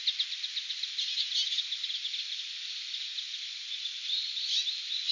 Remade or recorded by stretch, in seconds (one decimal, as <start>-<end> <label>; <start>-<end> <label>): 0.0-5.1 recorded